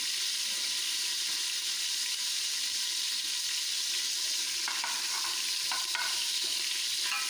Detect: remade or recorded recorded